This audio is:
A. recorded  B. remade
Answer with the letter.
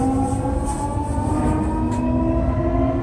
A